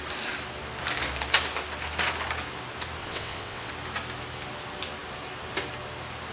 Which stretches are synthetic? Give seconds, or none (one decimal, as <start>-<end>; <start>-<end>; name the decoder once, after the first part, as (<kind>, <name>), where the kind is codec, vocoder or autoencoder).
3.0-3.7 (vocoder, WaveNeXt)

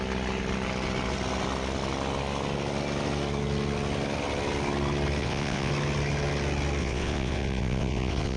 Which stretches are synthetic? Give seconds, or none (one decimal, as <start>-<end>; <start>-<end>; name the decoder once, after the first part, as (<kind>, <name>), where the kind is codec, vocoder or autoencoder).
5.2-5.7 (vocoder, WaveNeXt); 6.8-8.4

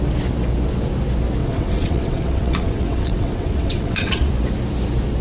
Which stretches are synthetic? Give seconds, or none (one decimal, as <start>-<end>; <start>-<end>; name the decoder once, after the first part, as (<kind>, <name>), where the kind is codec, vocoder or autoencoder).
1.4-4.3 (vocoder, WaveNeXt)

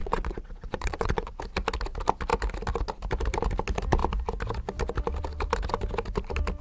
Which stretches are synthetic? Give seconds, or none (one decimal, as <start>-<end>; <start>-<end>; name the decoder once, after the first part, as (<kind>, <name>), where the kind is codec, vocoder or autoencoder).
0.0-1.4 (vocoder, WaveNeXt)